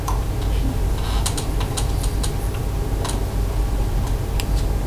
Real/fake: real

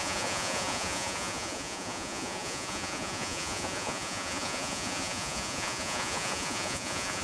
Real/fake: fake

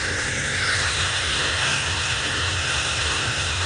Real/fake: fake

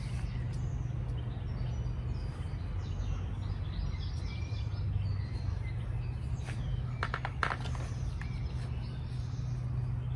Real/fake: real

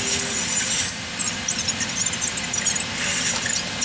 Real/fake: real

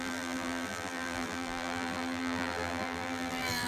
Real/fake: fake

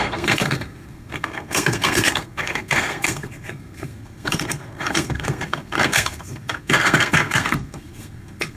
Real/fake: fake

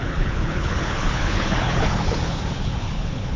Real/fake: fake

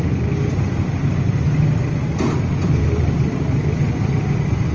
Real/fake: real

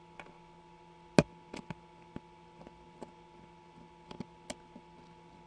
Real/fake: real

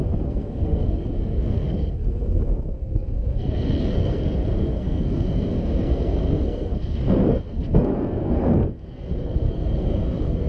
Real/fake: fake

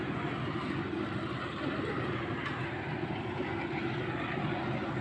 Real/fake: real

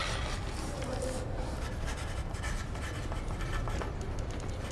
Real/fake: real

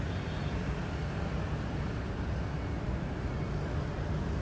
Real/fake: real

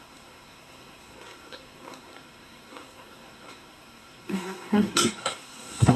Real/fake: fake